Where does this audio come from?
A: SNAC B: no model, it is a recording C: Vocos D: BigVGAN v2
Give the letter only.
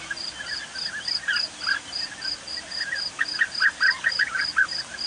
B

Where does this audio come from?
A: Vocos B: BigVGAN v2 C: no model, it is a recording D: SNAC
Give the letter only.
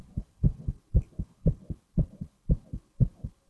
B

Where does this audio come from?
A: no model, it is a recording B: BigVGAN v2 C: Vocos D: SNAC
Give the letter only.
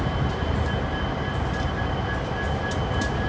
A